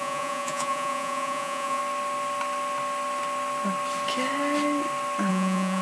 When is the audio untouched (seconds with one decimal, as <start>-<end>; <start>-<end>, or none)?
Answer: 1.8-5.3